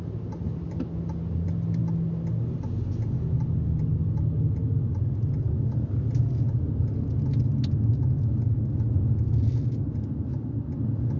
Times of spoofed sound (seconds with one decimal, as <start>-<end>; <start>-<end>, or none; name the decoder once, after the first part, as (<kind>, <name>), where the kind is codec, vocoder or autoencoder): none